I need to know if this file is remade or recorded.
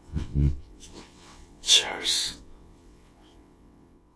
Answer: remade